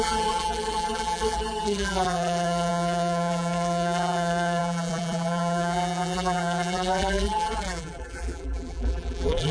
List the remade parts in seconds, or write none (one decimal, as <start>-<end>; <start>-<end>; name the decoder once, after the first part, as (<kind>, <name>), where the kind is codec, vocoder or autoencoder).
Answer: 0.0-9.5 (vocoder, BigVGAN v2)

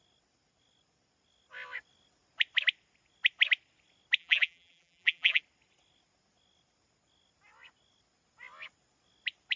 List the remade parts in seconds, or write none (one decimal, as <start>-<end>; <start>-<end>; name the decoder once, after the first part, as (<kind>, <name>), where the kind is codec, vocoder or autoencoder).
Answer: 4.2-5.4 (vocoder, BigVGAN v2)

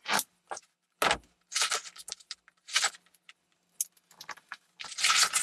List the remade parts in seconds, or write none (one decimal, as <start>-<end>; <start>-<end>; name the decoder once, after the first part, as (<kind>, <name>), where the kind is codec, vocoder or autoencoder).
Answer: none

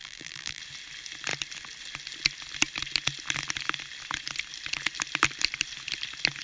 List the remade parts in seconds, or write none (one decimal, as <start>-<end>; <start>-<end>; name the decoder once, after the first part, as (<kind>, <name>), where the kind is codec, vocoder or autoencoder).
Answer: 0.0-0.6 (vocoder, BigVGAN v2)